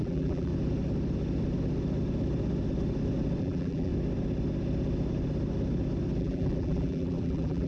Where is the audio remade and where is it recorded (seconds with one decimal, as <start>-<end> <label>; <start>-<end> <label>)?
0.0-0.5 remade; 0.5-3.4 recorded; 3.4-3.9 remade; 3.9-6.2 recorded; 6.2-7.7 remade